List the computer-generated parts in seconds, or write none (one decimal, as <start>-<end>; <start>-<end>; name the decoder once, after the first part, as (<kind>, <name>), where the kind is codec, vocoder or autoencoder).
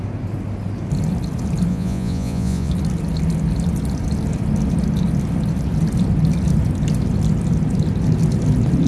1.7-2.7 (vocoder, Vocos)